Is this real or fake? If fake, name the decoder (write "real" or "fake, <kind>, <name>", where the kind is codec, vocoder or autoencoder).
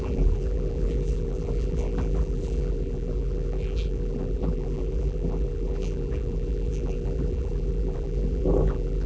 fake, vocoder, BigVGAN v2